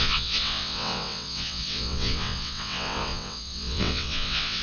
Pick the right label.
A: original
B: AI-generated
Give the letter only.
B